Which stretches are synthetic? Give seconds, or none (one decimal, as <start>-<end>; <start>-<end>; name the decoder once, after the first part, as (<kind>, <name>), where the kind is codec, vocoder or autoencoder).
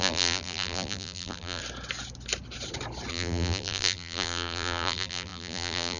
0.0-1.6 (vocoder, BigVGAN v2); 3.1-6.0